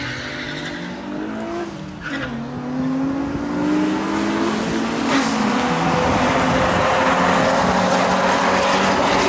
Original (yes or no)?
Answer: yes